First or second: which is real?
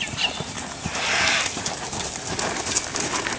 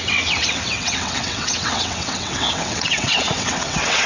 first